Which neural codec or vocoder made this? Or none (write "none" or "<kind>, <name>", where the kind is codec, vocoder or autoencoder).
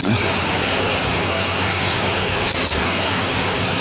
codec, SNAC